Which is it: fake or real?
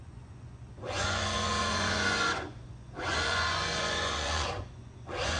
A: fake